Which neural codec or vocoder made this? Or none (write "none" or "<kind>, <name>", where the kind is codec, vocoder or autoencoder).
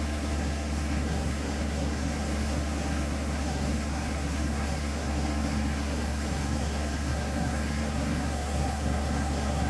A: codec, SNAC